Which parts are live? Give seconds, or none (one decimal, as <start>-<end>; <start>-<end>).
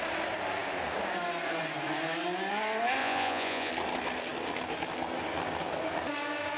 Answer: 0.0-3.0; 3.7-6.6